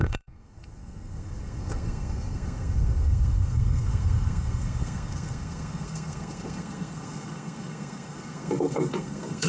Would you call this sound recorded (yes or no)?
no